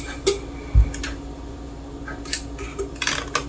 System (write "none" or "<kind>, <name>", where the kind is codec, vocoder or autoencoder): none